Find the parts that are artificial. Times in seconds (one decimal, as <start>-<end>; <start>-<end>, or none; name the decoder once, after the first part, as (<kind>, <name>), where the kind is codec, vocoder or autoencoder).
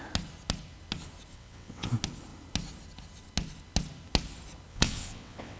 1.3-1.9 (vocoder, WaveNeXt); 4.7-5.6